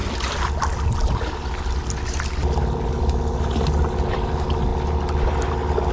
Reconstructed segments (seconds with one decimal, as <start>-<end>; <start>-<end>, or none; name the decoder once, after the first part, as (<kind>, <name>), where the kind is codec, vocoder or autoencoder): none